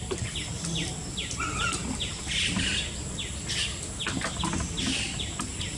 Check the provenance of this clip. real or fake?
real